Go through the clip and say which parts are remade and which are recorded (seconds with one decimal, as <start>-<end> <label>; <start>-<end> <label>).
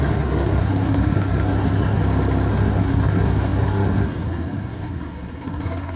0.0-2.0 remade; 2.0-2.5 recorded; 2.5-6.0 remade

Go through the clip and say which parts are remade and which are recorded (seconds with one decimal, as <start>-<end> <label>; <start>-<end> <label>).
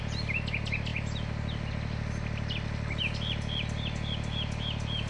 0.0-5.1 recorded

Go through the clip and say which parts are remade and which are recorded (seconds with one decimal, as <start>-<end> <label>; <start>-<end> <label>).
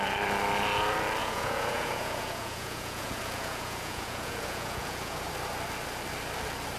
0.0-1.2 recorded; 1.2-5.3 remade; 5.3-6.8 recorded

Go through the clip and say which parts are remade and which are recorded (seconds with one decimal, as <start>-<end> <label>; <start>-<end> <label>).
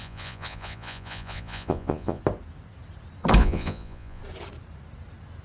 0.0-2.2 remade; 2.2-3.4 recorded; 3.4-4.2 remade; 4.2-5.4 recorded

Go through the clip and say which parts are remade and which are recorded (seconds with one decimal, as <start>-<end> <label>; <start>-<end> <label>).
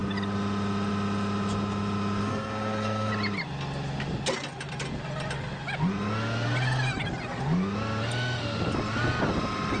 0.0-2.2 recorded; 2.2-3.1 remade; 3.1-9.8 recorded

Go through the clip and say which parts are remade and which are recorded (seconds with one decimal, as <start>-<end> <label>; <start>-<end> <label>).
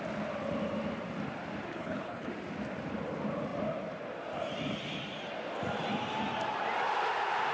0.0-1.7 recorded; 1.7-2.3 remade; 2.3-7.5 recorded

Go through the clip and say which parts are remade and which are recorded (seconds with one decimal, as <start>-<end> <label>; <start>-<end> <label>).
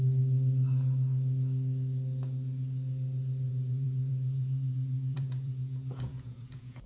0.0-3.5 recorded; 3.5-6.9 remade